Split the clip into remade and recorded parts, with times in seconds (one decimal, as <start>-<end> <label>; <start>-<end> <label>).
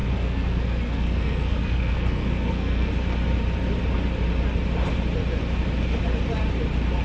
0.0-2.9 remade; 2.9-7.0 recorded